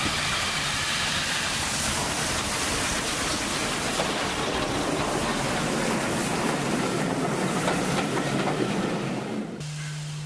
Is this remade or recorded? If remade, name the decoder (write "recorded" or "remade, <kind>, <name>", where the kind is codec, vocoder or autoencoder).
recorded